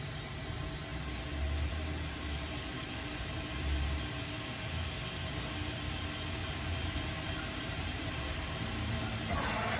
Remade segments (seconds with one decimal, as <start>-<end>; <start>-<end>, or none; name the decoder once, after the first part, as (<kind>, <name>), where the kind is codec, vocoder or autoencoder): 0.9-4.3 (vocoder, BigVGAN v2); 6.4-9.3